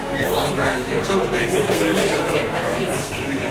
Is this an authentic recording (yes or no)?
no